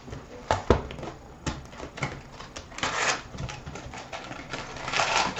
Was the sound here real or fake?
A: real